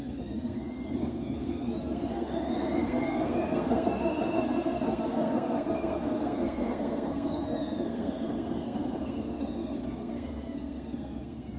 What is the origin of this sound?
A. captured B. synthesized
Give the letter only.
B